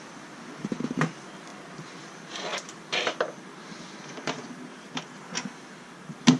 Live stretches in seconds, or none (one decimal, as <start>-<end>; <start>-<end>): 0.0-1.5; 5.3-6.4